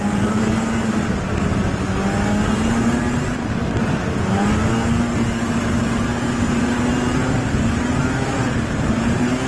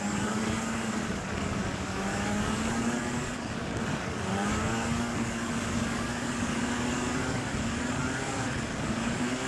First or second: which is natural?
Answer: first